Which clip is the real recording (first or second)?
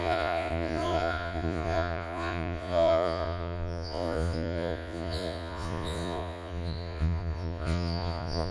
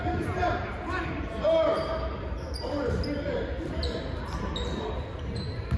second